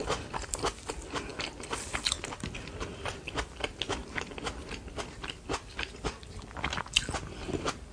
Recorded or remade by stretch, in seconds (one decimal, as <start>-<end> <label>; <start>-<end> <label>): 0.0-7.9 recorded